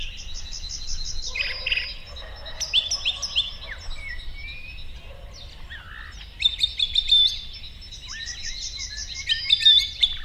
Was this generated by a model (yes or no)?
no